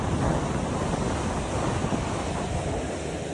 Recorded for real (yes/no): yes